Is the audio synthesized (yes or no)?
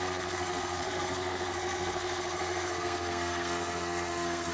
yes